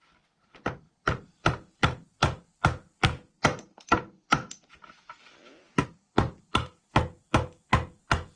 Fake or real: real